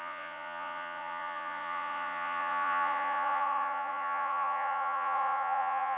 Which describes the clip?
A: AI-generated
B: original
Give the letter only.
A